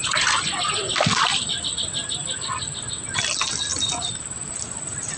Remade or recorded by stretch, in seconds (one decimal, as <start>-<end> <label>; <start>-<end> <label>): 0.0-1.7 remade; 1.7-2.2 recorded; 2.2-2.7 remade; 2.7-5.2 recorded